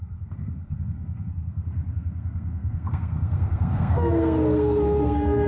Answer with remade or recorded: remade